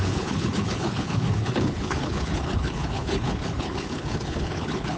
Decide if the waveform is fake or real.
fake